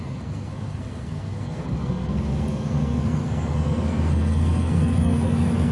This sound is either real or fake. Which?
fake